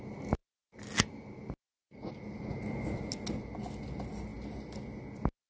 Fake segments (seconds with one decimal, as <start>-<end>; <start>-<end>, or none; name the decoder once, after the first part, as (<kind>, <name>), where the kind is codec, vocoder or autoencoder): none